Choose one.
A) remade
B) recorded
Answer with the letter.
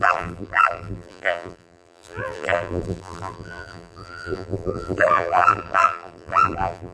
A